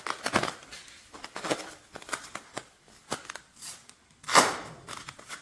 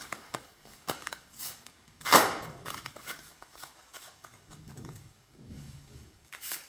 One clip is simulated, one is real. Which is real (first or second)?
first